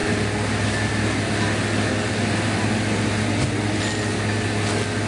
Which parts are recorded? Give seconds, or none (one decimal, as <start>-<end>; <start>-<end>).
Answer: 0.0-5.1